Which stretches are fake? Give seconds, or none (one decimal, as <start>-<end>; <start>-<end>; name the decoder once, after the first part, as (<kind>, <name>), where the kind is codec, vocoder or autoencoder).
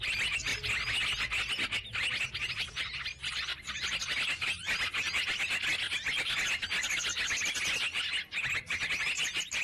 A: none